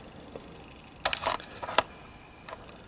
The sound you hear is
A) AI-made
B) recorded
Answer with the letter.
B